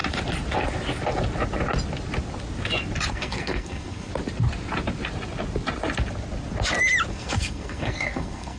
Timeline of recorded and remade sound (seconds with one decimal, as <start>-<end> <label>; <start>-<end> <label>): 0.0-3.1 recorded; 3.1-4.1 remade; 4.1-7.1 recorded; 7.1-8.6 remade